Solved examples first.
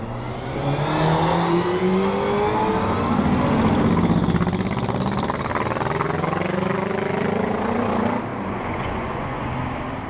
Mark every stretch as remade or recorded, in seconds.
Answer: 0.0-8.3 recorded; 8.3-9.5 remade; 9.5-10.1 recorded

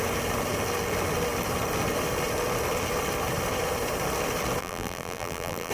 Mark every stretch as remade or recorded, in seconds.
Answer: 0.0-4.6 recorded; 4.6-5.7 remade

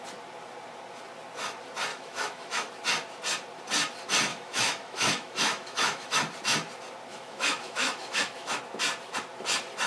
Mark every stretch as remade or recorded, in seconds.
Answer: 0.0-1.9 recorded; 1.9-2.7 remade; 2.7-4.3 recorded; 4.3-6.2 remade; 6.2-7.1 recorded; 7.1-8.6 remade; 8.6-9.9 recorded

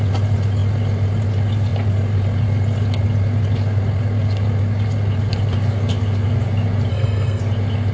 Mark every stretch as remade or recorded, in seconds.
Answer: 0.0-6.9 recorded; 6.9-7.4 remade; 7.4-7.9 recorded

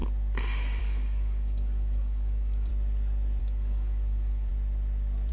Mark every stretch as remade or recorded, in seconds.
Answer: 0.0-0.8 recorded; 0.8-2.7 remade; 2.7-3.4 recorded; 3.4-4.5 remade; 4.5-5.3 recorded

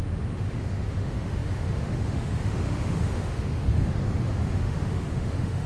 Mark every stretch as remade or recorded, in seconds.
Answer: 0.0-5.7 remade

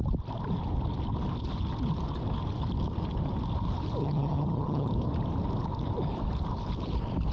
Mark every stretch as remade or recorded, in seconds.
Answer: 0.0-4.0 recorded; 4.0-4.9 remade; 4.9-7.3 recorded

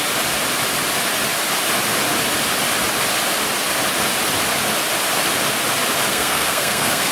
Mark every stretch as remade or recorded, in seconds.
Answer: 0.0-6.1 recorded; 6.1-7.1 remade